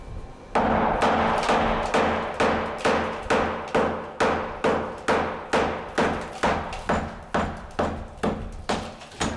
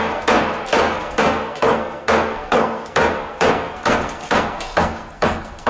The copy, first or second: second